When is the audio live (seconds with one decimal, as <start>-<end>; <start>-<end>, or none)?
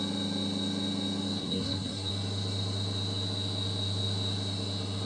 0.0-1.4; 2.1-5.0